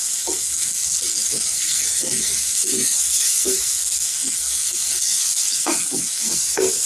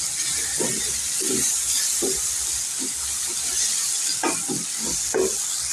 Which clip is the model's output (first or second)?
first